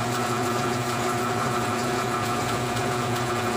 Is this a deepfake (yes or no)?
yes